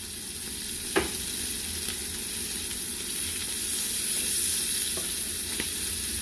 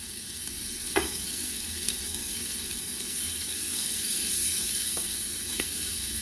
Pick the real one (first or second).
first